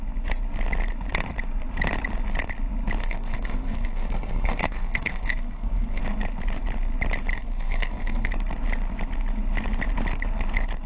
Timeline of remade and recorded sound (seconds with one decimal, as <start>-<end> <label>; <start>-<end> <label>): 0.0-3.0 recorded; 3.0-6.0 remade; 6.0-7.3 recorded; 7.3-8.3 remade; 8.3-10.9 recorded